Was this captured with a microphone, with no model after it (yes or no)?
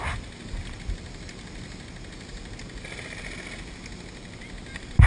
yes